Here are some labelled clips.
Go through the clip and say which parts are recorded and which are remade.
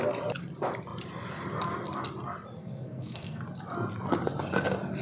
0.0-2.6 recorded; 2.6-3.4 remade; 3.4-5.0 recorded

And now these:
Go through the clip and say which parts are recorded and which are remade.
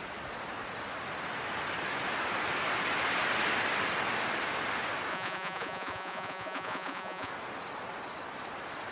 0.0-5.1 recorded; 5.1-7.3 remade; 7.3-8.9 recorded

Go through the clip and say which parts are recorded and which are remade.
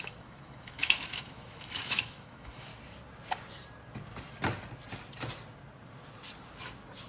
0.0-2.7 remade; 2.7-7.1 recorded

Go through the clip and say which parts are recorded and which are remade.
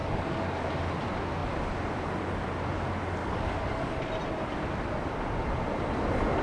0.0-0.7 remade; 0.7-3.2 recorded; 3.2-4.0 remade; 4.0-6.4 recorded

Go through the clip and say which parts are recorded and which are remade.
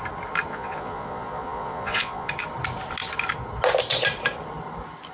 0.0-0.5 recorded; 0.5-2.3 remade; 2.3-5.1 recorded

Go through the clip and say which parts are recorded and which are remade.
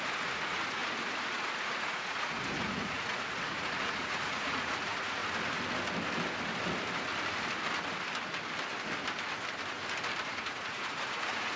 0.0-5.2 remade; 5.2-10.3 recorded; 10.3-11.6 remade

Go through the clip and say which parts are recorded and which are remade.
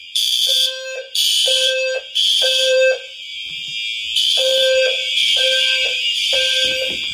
0.0-3.7 remade; 3.7-4.2 recorded; 4.2-7.1 remade